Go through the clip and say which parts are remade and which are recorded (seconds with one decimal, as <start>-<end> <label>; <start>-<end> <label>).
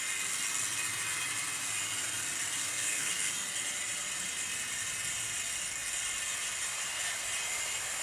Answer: 0.0-2.6 recorded; 2.6-3.3 remade; 3.3-8.0 recorded